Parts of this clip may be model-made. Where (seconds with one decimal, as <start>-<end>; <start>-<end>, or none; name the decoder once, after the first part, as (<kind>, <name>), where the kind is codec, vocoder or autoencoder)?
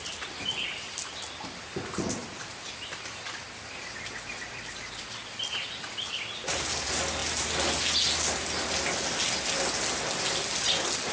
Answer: 2.2-6.5 (vocoder, BigVGAN v2)